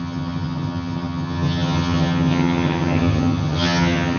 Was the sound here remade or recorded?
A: remade